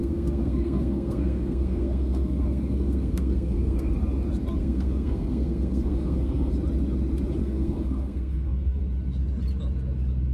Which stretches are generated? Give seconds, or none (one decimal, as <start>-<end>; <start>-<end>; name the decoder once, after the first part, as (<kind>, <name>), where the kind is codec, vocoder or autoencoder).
0.0-3.9 (codec, SNAC); 4.6-6.5; 7.4-8.8

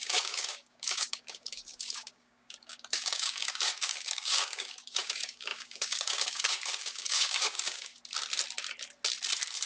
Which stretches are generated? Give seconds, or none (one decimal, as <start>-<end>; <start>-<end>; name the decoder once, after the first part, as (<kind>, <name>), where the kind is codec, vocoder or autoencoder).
0.0-7.9 (codec, DAC)

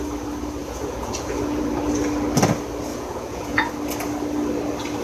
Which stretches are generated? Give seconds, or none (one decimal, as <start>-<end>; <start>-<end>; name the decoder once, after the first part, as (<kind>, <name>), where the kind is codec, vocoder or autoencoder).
0.6-1.6 (vocoder, Vocos); 2.9-3.7

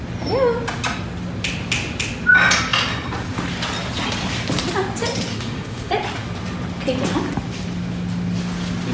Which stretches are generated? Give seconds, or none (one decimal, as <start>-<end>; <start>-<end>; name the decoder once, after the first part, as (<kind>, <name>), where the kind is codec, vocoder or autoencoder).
5.3-5.9 (autoencoder, DAC-VAE)

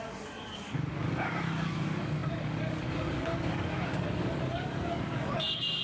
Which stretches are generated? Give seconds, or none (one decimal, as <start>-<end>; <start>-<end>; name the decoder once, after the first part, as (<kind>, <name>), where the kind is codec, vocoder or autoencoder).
0.0-5.8 (codec, DAC)